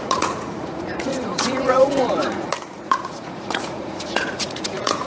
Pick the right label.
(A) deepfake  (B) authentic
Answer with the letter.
A